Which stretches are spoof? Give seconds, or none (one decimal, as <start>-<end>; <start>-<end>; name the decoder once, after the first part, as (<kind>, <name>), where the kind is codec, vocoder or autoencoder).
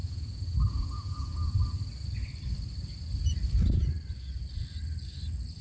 0.0-1.6 (vocoder, Vocos)